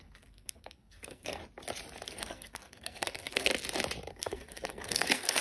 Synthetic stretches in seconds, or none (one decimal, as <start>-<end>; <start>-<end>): 0.0-1.4; 2.1-3.5; 4.1-5.4